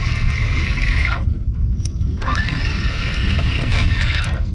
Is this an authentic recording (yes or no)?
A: no